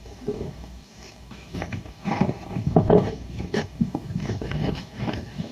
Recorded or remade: remade